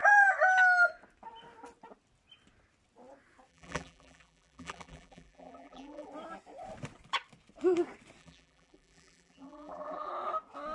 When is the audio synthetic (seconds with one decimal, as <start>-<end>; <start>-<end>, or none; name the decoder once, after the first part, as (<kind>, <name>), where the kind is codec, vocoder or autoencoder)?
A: 3.5-6.1 (vocoder, BigVGAN v2); 8.2-10.1